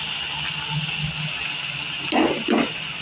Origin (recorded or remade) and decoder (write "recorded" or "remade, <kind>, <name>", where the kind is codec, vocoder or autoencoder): recorded